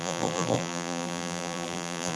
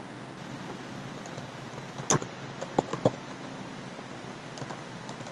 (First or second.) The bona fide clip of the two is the second